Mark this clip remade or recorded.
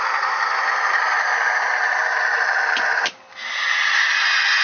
recorded